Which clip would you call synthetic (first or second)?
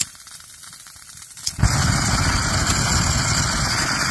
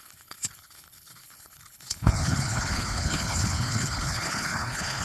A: second